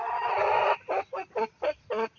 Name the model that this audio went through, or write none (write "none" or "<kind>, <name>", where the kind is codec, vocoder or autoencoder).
vocoder, BigVGAN v2